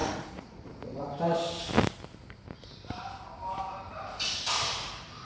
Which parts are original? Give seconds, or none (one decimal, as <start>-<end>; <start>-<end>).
1.1-5.2